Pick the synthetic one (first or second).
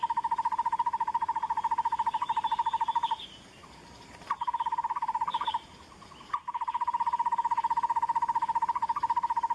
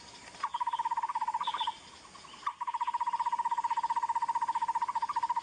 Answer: first